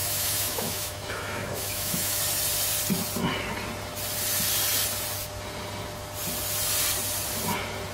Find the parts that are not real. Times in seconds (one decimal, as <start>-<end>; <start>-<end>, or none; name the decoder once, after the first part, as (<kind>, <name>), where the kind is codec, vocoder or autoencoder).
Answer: 0.0-2.2 (autoencoder, DAC-VAE)